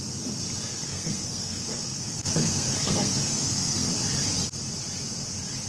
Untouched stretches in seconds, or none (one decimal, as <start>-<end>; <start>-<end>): 0.0-0.9; 3.9-5.7